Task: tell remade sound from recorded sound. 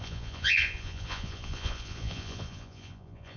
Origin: remade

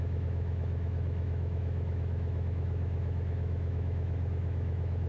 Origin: remade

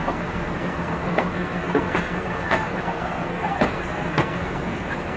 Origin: remade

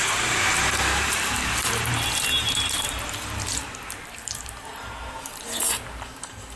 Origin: remade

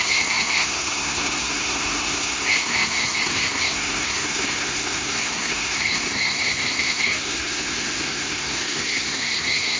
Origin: remade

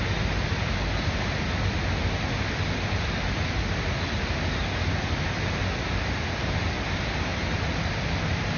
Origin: recorded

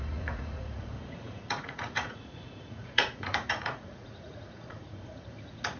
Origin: remade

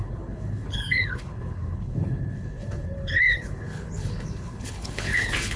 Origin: remade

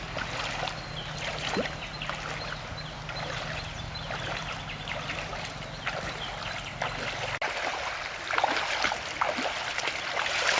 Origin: recorded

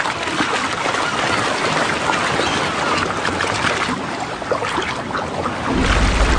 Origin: recorded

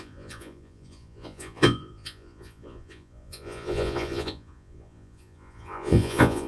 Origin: remade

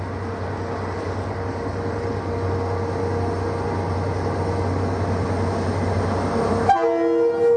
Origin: recorded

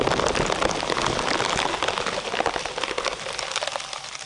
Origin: recorded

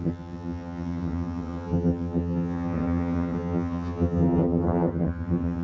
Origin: remade